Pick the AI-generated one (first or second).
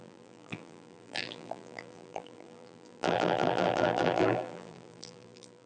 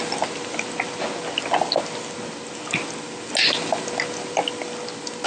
first